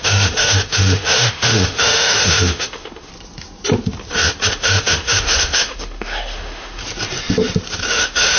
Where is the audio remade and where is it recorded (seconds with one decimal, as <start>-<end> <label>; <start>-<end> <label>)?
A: 0.0-3.1 remade; 3.1-4.5 recorded; 4.5-6.8 remade; 6.8-7.9 recorded; 7.9-8.4 remade